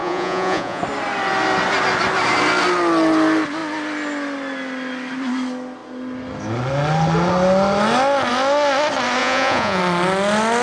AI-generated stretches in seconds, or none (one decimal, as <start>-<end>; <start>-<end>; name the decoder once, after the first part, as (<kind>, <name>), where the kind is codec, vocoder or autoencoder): 0.0-0.8 (vocoder, Vocos); 9.2-9.8